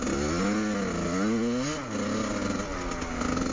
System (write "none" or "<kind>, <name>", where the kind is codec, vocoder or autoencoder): none